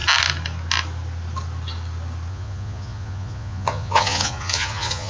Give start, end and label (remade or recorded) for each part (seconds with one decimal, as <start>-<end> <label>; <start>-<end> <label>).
0.0-2.3 recorded; 2.3-5.1 remade